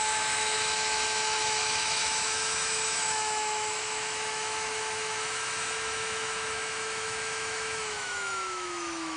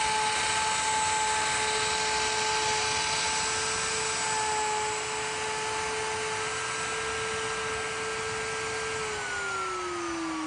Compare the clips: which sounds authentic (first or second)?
second